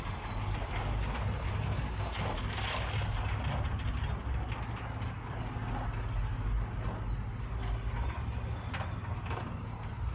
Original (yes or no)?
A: yes